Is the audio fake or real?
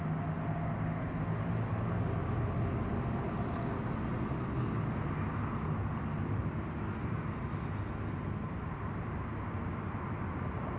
real